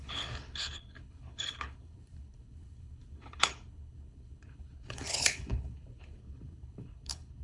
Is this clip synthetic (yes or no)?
yes